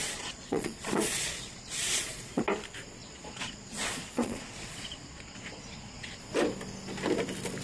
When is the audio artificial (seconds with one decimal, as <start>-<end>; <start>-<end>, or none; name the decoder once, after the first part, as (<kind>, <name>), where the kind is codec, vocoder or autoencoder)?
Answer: 0.0-2.4 (vocoder, Vocos); 3.0-6.2